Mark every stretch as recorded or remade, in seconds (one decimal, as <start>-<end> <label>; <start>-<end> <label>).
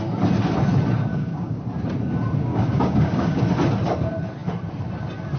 0.0-1.1 recorded; 1.1-1.6 remade; 1.6-2.5 recorded; 2.5-3.4 remade; 3.4-5.4 recorded